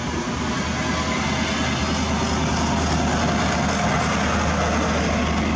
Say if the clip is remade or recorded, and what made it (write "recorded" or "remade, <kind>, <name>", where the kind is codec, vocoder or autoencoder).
recorded